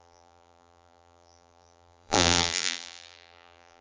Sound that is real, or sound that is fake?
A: fake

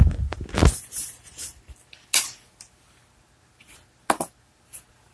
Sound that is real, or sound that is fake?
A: real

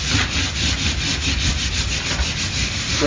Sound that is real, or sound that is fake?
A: real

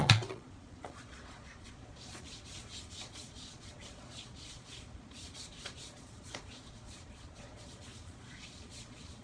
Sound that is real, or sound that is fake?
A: fake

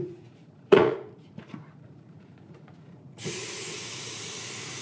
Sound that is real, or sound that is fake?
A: fake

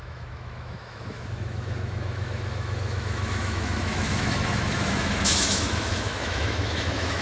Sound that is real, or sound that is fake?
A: fake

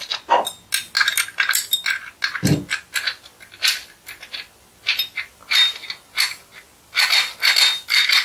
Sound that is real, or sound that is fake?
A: real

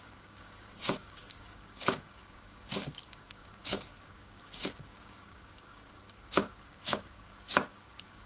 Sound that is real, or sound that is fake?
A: fake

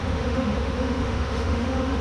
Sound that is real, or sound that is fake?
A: fake